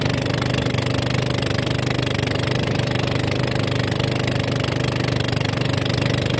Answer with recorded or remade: recorded